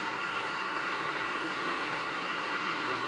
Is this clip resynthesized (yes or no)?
yes